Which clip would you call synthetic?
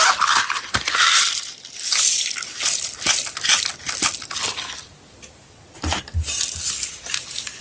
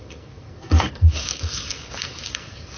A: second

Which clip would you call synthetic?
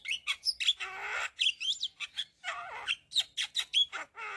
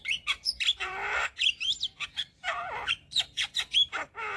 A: second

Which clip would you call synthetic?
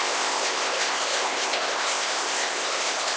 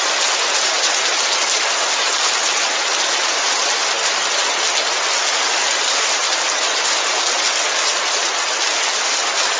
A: first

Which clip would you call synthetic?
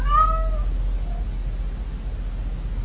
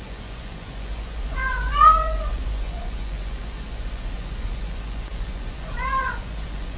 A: second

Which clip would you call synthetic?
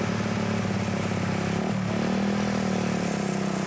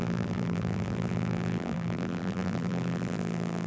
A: second